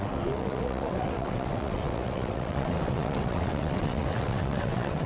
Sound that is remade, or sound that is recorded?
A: remade